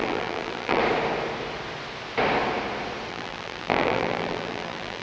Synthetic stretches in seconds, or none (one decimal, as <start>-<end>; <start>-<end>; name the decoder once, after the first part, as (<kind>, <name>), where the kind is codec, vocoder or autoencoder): 0.0-0.8 (vocoder, BigVGAN v2); 3.1-5.0